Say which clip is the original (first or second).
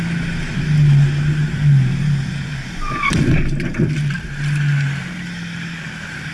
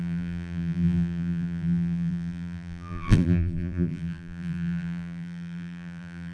first